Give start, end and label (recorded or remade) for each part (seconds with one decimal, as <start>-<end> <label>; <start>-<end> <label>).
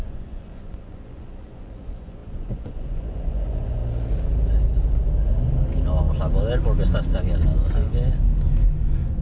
0.0-3.8 remade; 3.8-8.7 recorded; 8.7-9.2 remade